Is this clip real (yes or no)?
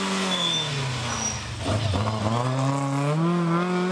yes